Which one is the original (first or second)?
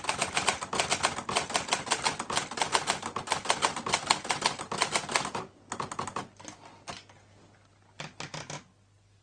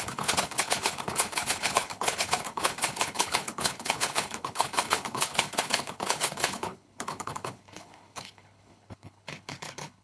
first